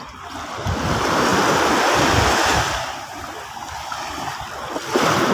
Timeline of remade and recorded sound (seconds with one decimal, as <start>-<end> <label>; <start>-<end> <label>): 0.0-1.3 recorded; 1.3-2.1 remade; 2.1-2.5 recorded; 2.5-3.1 remade; 3.1-5.3 recorded